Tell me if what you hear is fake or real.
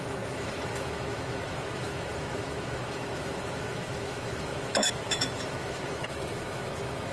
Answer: fake